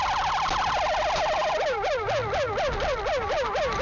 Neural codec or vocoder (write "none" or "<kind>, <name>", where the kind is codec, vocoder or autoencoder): none